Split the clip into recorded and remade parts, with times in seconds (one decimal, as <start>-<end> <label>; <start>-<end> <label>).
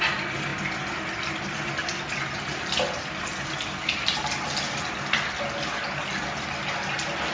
0.0-7.3 recorded